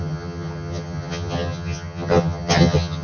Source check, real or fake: fake